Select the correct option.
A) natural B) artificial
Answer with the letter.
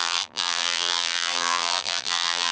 B